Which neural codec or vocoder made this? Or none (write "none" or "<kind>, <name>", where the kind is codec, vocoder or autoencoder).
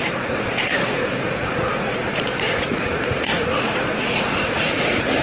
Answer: vocoder, Vocos